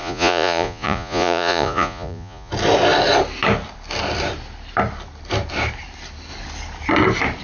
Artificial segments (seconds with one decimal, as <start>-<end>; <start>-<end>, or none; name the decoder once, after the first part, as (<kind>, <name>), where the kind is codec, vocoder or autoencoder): 0.0-2.5 (vocoder, Vocos)